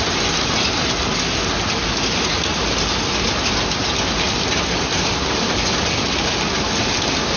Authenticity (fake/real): real